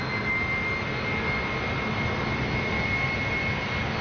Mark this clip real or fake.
real